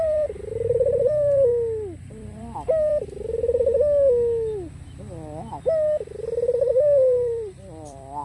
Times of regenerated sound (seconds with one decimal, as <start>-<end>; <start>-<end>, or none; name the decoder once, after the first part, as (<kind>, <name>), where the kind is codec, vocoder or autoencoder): 0.0-1.5 (vocoder, BigVGAN v2); 2.0-3.7; 6.7-8.2